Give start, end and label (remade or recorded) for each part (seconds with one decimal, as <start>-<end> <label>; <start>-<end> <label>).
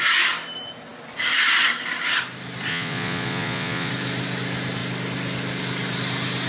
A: 0.0-2.7 recorded; 2.7-3.9 remade; 3.9-6.5 recorded